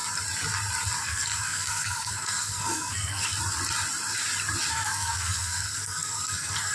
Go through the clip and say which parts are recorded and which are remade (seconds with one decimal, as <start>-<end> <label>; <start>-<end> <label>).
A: 0.0-1.0 recorded; 1.0-3.3 remade; 3.3-4.7 recorded; 4.7-6.7 remade